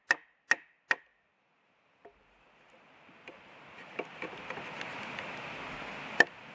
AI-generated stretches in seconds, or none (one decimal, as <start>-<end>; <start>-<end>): none